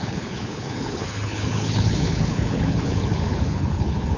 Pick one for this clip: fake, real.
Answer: fake